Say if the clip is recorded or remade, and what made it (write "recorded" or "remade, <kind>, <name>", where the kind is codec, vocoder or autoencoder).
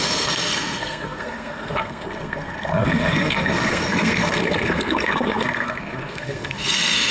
remade, codec, SNAC